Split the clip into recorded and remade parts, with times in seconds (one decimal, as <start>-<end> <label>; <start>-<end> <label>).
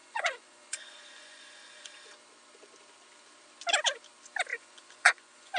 0.0-1.9 remade; 1.9-4.5 recorded; 4.5-5.6 remade